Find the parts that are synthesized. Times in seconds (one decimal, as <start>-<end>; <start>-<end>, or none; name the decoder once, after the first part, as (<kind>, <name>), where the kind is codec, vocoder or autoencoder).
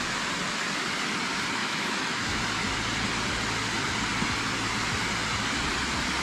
1.6-2.4 (autoencoder, DAC-VAE)